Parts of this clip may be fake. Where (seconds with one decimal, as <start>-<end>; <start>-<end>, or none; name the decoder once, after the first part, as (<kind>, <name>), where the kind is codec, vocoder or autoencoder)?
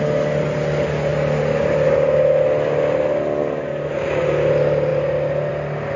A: none